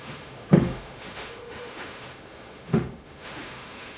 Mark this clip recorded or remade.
remade